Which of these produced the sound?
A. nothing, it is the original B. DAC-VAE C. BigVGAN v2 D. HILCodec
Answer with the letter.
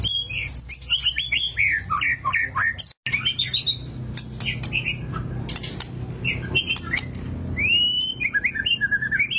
A